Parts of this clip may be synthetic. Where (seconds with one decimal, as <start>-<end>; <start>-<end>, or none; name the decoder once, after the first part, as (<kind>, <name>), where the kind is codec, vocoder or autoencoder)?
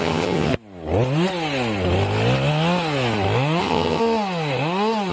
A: 0.0-0.5 (vocoder, HiFi-GAN); 3.6-4.0